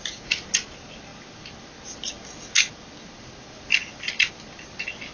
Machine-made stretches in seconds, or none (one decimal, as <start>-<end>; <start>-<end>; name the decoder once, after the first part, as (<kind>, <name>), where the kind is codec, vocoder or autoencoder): none